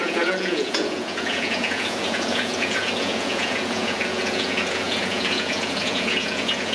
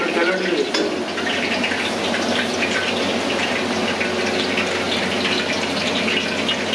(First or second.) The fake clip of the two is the first